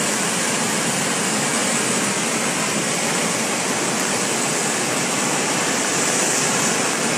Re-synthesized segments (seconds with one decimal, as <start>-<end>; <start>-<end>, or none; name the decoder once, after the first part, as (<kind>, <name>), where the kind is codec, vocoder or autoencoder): 1.6-5.9 (vocoder, BigVGAN v2)